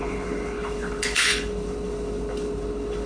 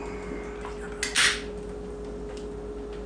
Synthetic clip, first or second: first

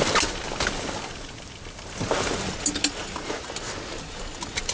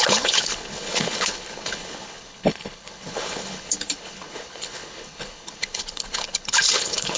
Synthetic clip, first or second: second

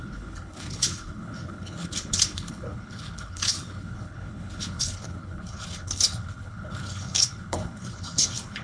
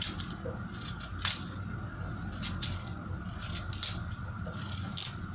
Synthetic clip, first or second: first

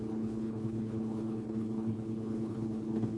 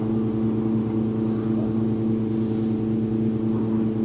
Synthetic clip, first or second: first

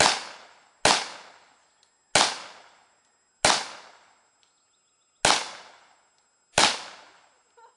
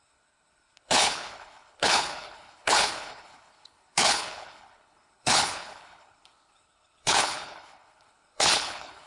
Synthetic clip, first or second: second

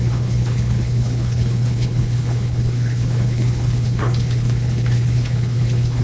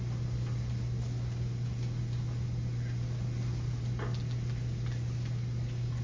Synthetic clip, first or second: first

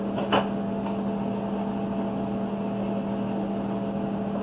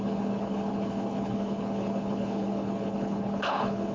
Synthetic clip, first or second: second